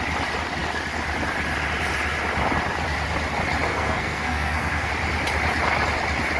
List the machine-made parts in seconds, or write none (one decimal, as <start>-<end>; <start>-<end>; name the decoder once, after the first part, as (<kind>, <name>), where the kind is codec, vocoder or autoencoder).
3.7-4.9 (codec, SNAC)